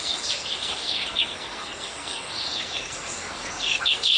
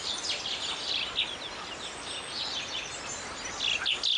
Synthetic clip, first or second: first